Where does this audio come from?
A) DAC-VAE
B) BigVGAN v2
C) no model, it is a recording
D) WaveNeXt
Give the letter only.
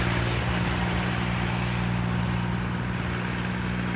C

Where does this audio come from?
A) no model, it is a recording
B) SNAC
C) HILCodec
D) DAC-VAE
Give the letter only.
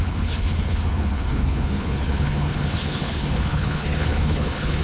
C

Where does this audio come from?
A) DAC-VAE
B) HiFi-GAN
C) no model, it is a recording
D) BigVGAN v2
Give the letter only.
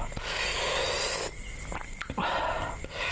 C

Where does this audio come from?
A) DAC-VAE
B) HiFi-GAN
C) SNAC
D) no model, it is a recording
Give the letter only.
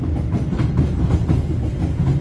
D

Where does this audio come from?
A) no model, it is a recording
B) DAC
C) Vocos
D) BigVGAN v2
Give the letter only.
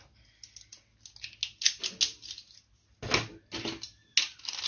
A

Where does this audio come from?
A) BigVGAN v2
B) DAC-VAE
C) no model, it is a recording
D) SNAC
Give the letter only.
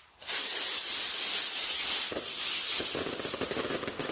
C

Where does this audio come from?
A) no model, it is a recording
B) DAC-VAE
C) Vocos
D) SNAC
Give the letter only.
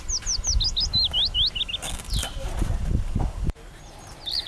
A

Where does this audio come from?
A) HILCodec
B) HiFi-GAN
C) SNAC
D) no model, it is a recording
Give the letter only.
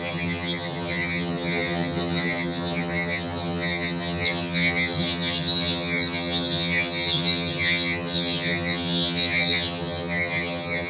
B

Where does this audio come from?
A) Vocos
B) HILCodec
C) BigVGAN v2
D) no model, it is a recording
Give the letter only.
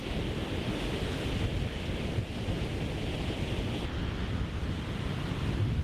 D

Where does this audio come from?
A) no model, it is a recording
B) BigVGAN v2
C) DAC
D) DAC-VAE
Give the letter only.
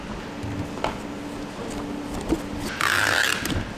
A